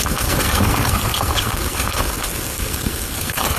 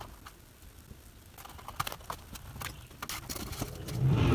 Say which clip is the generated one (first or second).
first